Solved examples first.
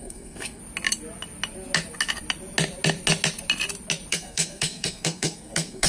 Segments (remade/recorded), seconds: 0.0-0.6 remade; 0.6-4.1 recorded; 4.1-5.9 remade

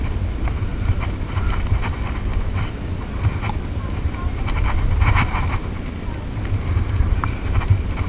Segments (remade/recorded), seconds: 0.0-0.7 recorded; 0.7-1.6 remade; 1.6-8.1 recorded